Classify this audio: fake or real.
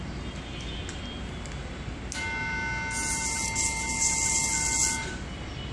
real